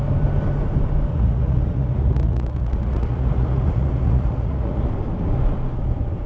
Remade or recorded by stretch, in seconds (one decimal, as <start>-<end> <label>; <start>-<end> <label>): 0.0-1.1 recorded; 1.1-4.9 remade; 4.9-6.3 recorded